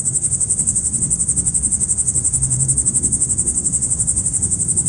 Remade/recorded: remade